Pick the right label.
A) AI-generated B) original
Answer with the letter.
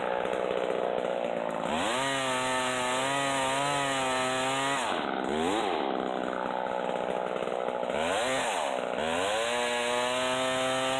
B